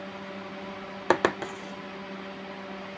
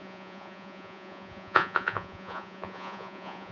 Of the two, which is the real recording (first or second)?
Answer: first